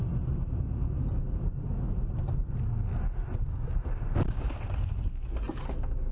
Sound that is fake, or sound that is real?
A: real